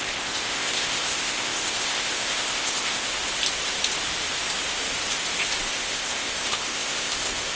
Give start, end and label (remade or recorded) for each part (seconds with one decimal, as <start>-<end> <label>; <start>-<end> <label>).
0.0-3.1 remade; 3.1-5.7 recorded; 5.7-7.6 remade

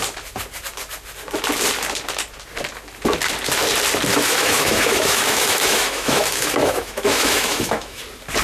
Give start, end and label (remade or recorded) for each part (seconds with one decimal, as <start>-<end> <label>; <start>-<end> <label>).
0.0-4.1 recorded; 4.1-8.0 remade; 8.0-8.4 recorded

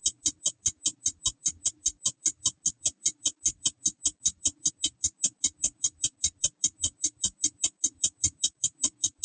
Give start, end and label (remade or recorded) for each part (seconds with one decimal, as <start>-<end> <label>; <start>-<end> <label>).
0.0-9.2 recorded